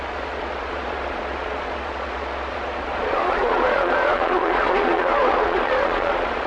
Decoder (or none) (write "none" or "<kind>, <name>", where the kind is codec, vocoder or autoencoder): vocoder, Vocos